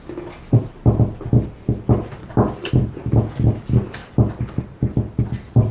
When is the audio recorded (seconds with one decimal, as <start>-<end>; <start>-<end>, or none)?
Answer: 0.0-4.0; 4.6-5.7